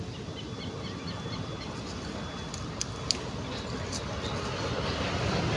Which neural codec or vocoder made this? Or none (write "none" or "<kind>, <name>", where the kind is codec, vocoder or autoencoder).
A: none